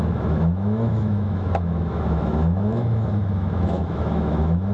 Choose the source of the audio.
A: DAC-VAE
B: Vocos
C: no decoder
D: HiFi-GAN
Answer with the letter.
A